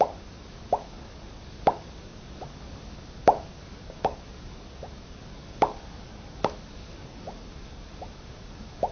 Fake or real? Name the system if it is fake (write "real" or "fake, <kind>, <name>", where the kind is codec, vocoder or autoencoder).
fake, codec, DAC